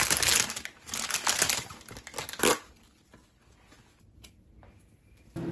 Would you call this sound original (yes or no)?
yes